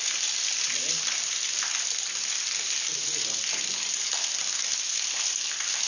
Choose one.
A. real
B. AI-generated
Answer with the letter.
A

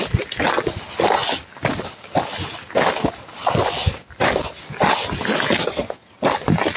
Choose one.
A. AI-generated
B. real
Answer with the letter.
B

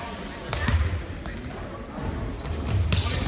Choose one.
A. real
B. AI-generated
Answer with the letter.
A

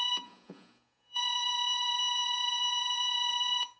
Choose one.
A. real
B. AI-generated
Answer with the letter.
B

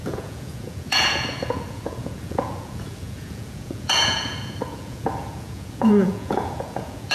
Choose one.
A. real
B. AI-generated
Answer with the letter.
B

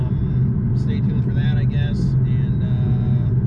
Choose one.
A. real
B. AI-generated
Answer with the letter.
A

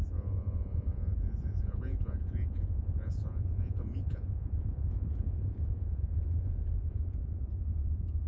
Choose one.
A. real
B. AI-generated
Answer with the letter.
B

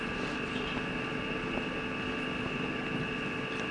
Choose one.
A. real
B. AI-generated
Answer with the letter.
A